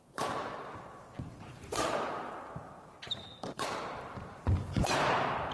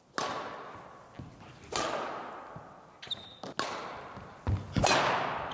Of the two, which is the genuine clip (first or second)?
second